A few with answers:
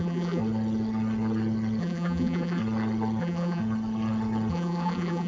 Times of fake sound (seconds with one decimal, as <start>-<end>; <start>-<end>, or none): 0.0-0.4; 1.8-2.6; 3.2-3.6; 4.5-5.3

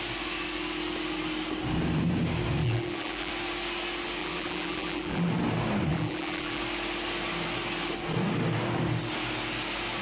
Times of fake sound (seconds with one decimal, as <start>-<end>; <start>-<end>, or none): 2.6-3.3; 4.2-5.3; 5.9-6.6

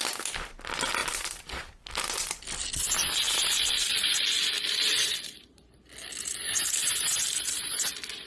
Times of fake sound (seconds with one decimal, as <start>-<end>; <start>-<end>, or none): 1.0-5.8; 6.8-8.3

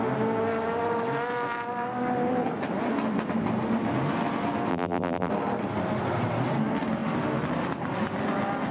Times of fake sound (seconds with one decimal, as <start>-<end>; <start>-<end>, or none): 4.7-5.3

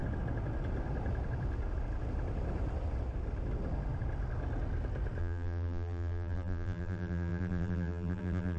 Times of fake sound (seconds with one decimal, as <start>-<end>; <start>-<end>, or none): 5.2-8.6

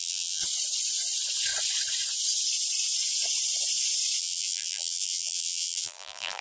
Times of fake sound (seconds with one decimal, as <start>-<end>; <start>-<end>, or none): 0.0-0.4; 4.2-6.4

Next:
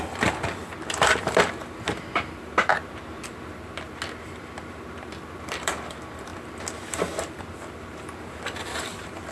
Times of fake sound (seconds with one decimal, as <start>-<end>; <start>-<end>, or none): 0.0-2.7; 5.0-9.3